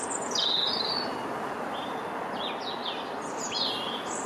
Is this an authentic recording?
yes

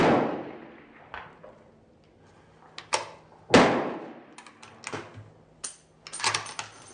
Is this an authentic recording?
yes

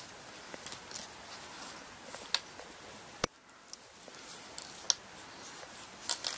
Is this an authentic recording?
yes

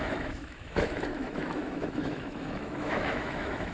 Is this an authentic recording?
no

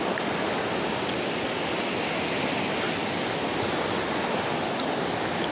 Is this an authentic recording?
yes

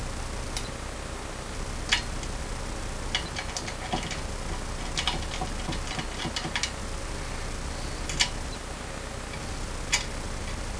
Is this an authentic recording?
yes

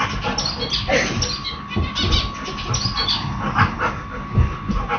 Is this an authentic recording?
yes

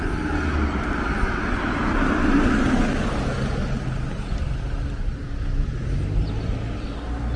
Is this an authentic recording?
yes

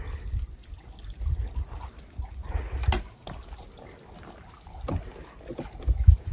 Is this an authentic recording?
yes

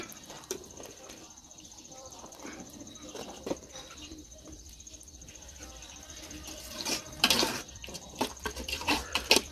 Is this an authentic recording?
no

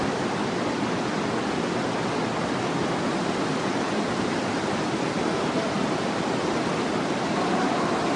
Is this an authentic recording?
yes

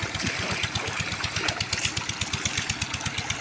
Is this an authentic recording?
yes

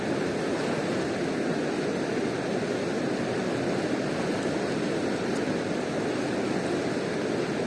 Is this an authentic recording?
yes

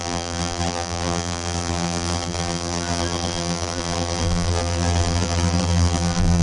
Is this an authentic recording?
no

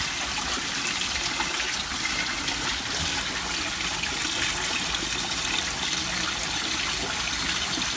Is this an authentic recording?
no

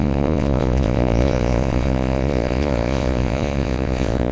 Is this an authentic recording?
no